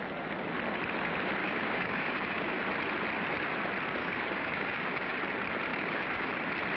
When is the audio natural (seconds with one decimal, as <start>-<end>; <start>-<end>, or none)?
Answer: 0.0-1.4; 2.6-4.0; 5.2-5.7; 6.3-6.8